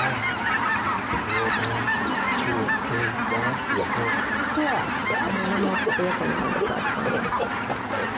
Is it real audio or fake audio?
real